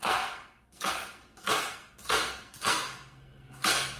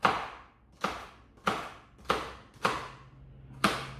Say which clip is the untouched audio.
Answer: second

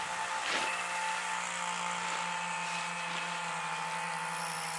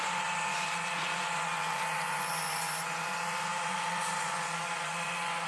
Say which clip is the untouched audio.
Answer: first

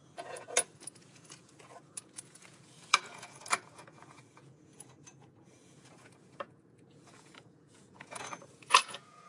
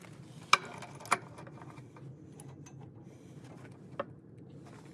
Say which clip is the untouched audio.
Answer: second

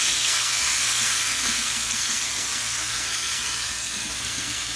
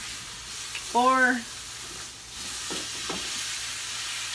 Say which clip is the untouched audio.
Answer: second